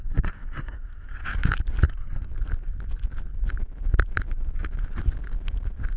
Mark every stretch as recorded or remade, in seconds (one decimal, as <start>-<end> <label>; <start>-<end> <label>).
0.0-1.2 remade; 1.2-1.9 recorded; 1.9-2.3 remade; 2.3-6.0 recorded